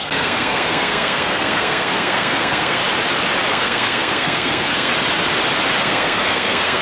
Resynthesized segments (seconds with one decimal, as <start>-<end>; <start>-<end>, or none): 0.0-2.8; 3.5-4.9; 5.8-6.8